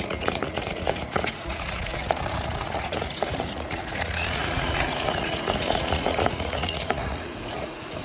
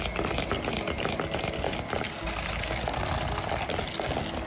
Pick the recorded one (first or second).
second